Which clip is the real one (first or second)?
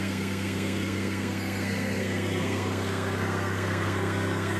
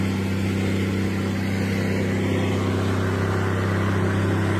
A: second